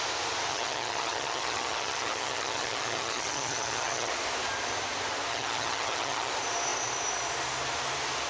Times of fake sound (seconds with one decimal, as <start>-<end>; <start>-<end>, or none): 0.5-4.1; 5.3-6.3

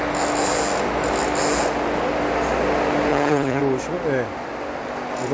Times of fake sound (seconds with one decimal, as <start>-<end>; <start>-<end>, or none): 3.1-3.6

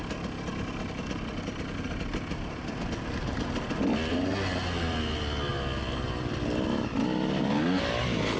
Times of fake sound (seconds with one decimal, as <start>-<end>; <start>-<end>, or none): none